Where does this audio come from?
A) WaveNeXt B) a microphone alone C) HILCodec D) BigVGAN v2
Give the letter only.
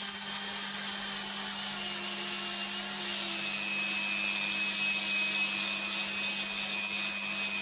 B